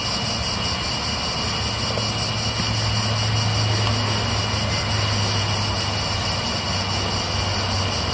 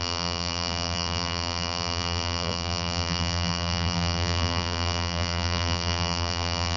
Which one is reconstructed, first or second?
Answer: second